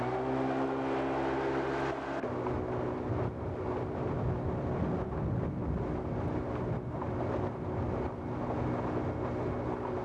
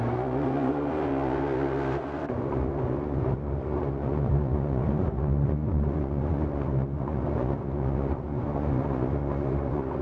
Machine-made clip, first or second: second